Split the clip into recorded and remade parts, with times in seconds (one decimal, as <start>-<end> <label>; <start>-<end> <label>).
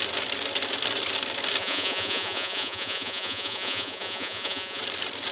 0.0-1.6 recorded; 1.6-4.8 remade; 4.8-5.3 recorded